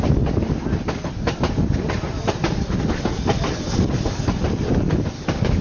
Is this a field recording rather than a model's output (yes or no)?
yes